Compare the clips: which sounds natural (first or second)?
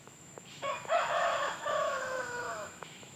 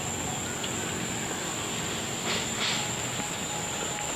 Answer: second